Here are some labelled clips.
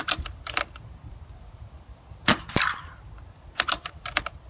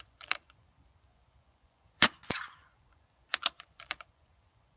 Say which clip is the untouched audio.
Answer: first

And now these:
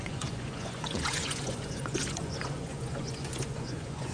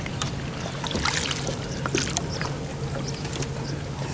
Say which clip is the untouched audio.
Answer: second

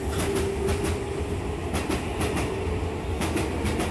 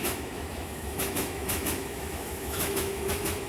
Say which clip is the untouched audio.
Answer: first